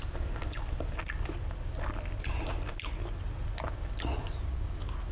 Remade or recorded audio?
recorded